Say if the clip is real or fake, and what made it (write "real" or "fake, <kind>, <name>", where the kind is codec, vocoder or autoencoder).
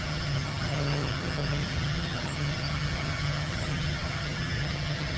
fake, vocoder, HiFi-GAN